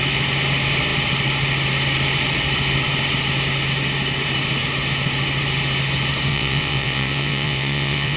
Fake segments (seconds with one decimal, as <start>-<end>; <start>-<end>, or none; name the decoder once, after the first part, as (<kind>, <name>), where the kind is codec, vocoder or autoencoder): 6.3-8.2 (vocoder, WaveNeXt)